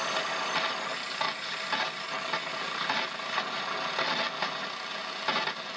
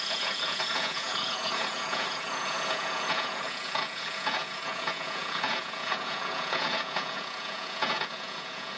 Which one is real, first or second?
first